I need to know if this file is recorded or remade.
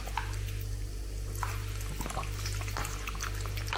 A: recorded